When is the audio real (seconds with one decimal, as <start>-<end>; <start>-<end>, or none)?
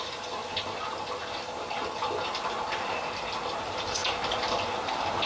0.4-3.6; 4.0-5.3